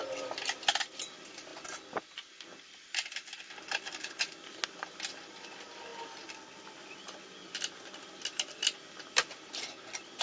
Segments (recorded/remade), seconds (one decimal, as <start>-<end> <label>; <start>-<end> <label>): 0.0-10.2 recorded